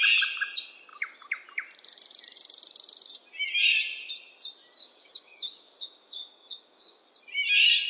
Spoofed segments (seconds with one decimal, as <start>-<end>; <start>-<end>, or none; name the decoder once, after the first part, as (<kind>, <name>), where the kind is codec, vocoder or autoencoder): 4.8-7.0 (codec, DAC)